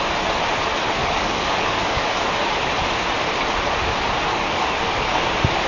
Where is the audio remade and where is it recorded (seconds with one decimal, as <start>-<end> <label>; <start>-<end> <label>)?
0.0-1.0 recorded; 1.0-2.3 remade; 2.3-4.3 recorded; 4.3-5.3 remade; 5.3-5.7 recorded